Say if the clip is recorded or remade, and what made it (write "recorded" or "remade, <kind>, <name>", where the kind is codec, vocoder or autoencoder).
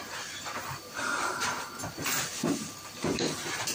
remade, vocoder, BigVGAN v2